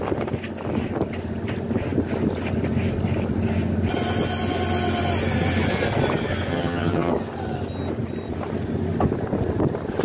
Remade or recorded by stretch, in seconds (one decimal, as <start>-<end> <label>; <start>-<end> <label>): 0.0-6.5 recorded; 6.5-7.1 remade; 7.1-10.0 recorded